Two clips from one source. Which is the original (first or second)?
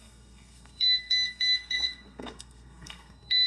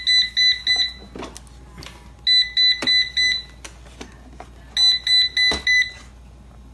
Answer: second